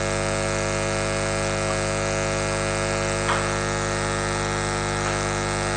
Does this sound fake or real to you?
real